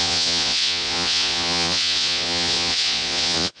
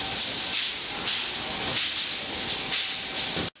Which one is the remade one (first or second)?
first